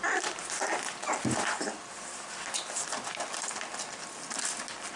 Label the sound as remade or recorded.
recorded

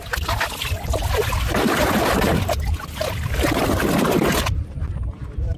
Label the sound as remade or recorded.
remade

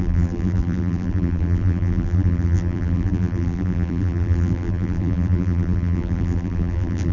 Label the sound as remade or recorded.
remade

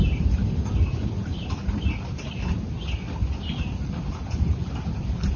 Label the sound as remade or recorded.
recorded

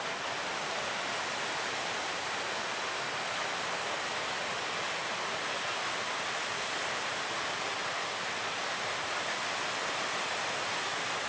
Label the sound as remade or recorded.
recorded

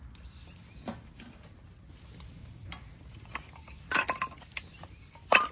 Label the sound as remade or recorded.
recorded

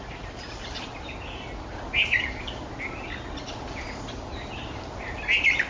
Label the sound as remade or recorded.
recorded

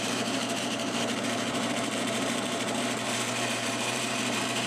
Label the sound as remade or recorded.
remade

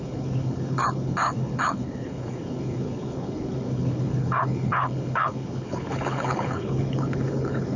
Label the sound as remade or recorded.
remade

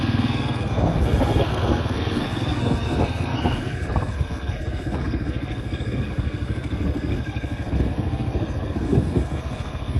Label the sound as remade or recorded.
remade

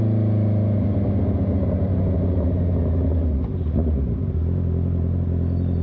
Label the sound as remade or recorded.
recorded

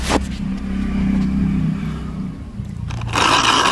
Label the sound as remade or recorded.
recorded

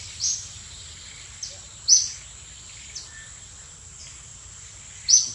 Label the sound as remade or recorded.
recorded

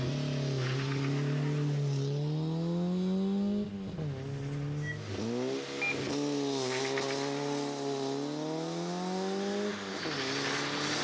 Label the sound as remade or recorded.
recorded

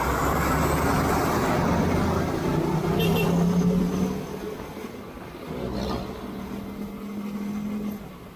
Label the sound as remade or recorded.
recorded